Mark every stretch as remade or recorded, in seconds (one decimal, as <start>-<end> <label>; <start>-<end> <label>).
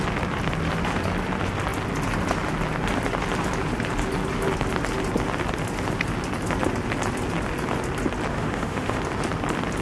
0.0-8.3 recorded; 8.3-9.0 remade; 9.0-9.8 recorded